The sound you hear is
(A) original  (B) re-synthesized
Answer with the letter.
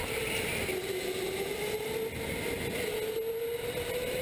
A